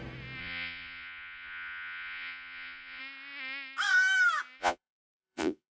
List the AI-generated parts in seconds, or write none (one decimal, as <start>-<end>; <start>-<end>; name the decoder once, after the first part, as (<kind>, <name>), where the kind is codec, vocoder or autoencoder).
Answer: 0.4-3.0 (vocoder, Vocos); 4.6-5.7